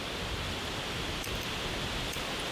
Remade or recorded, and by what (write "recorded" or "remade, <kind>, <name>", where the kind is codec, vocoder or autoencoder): recorded